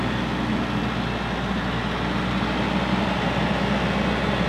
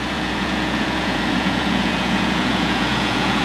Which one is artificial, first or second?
second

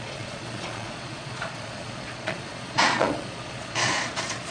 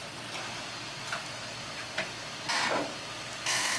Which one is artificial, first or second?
first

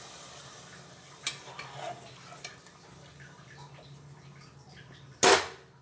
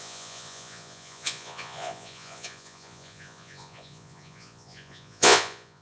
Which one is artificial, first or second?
second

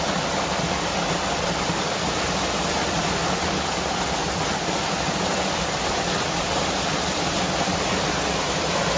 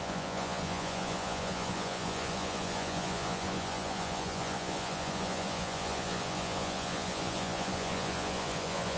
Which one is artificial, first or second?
second